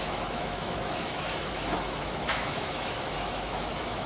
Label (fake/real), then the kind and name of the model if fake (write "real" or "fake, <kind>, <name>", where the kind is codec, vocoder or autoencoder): fake, autoencoder, DAC-VAE